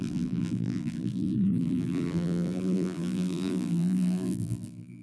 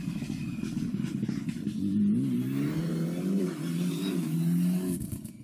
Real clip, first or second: second